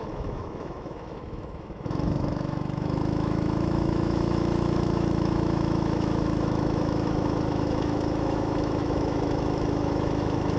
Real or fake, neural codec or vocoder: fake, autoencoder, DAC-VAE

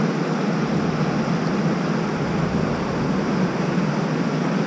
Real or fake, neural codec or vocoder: real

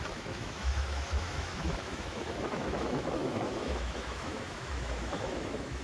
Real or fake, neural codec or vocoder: fake, autoencoder, DAC-VAE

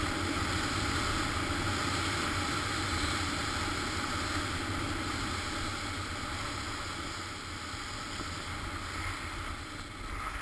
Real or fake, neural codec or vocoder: real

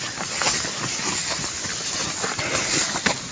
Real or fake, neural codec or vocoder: real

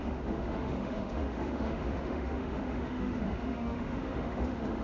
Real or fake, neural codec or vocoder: fake, autoencoder, DAC-VAE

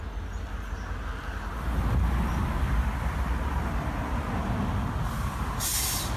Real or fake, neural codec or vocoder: real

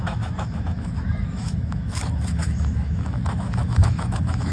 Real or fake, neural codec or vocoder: fake, autoencoder, DAC-VAE